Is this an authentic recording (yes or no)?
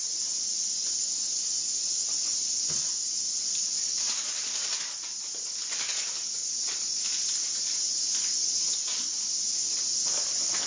yes